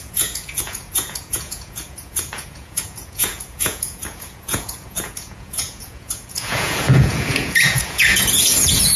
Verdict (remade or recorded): remade